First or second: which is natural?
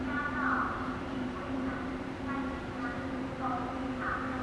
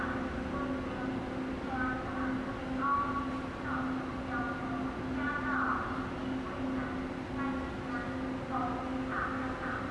second